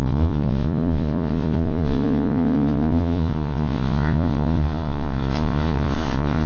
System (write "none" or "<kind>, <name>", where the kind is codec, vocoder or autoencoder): vocoder, Vocos